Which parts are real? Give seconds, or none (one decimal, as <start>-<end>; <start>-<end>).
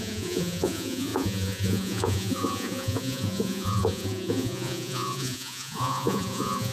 none